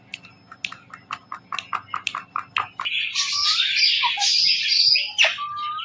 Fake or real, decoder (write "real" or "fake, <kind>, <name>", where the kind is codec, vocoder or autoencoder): real